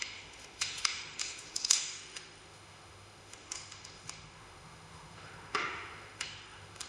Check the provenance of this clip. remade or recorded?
remade